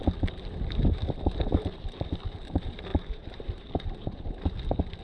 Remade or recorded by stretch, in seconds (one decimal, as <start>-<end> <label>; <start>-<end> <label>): 0.0-2.9 recorded; 2.9-3.7 remade; 3.7-5.0 recorded